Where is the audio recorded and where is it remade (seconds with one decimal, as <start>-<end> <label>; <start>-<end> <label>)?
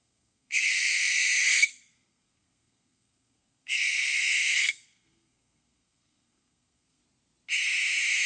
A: 0.0-7.0 remade; 7.0-8.3 recorded